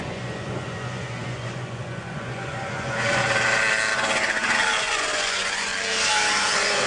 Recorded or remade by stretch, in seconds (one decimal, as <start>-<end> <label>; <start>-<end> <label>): 0.0-3.2 remade; 3.2-4.8 recorded; 4.8-5.7 remade; 5.7-6.4 recorded; 6.4-6.9 remade